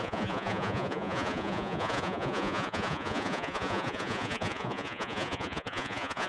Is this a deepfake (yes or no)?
yes